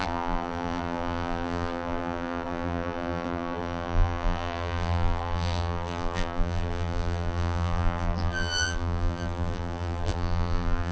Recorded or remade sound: remade